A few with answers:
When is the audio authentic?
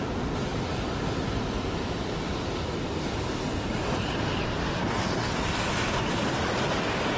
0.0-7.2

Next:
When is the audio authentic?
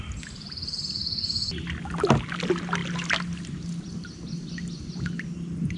0.0-5.8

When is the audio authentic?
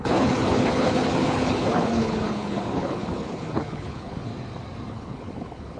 4.3-4.9